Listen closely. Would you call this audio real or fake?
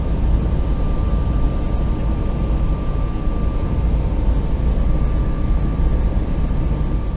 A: real